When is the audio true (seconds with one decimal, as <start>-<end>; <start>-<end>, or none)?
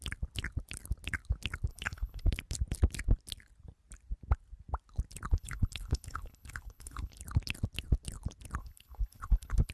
0.0-1.7; 2.3-5.3; 7.2-8.6